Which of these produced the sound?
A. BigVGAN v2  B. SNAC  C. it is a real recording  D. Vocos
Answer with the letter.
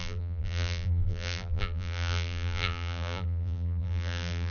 A